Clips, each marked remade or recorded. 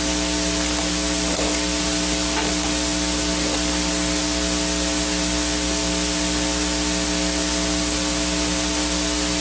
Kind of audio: recorded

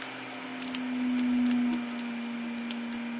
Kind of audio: recorded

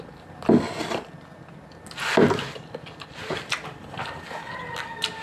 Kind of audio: recorded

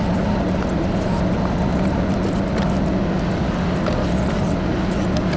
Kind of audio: recorded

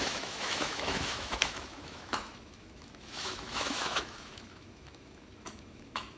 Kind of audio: remade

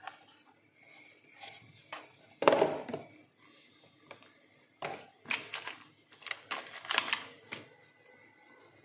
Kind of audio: recorded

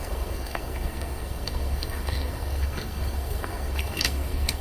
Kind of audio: remade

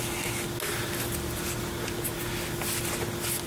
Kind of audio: recorded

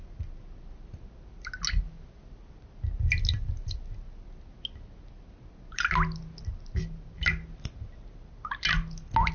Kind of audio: recorded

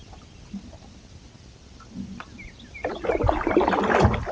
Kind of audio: recorded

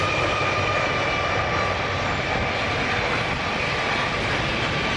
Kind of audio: recorded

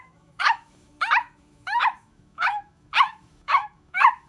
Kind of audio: remade